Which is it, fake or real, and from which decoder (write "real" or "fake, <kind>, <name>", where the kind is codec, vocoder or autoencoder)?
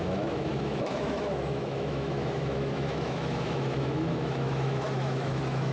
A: fake, autoencoder, DAC-VAE